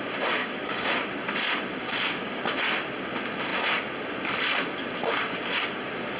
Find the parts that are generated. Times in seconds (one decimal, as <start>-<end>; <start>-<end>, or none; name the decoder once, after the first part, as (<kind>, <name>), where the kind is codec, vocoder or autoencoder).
0.4-0.9 (codec, DAC); 1.8-2.4